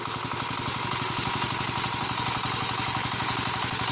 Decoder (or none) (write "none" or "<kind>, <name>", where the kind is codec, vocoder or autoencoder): none